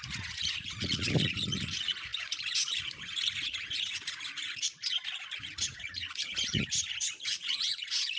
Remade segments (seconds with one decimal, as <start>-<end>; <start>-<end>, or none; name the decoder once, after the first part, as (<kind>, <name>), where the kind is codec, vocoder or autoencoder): 0.0-8.2 (vocoder, Vocos)